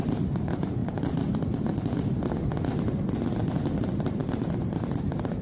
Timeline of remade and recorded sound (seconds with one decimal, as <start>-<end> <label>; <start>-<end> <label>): 0.0-0.8 remade; 0.8-3.8 recorded; 3.8-4.2 remade; 4.2-4.7 recorded; 4.7-5.4 remade